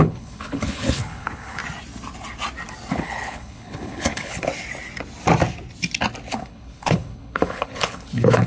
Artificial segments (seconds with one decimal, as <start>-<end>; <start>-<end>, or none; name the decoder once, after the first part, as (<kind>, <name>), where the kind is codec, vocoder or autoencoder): 0.0-1.6 (codec, HILCodec); 2.9-4.5; 6.3-8.5